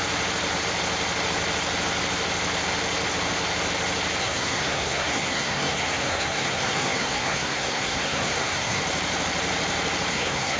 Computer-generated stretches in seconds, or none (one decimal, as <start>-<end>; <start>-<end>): 4.2-8.8; 10.1-10.6